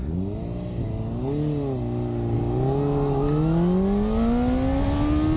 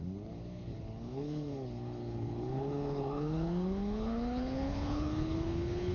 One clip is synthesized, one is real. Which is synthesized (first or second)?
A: second